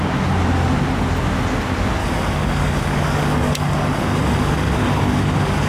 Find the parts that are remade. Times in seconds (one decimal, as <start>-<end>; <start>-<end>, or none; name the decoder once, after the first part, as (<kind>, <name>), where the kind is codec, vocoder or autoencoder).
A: 2.0-5.7 (codec, DAC)